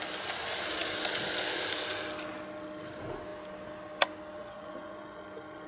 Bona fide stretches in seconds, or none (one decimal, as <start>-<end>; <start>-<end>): 0.0-4.4; 5.2-5.7